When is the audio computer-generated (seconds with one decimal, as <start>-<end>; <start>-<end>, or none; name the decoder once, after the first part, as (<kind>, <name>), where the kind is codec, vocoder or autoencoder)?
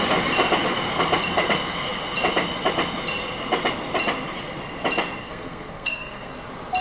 5.2-6.3 (codec, SNAC)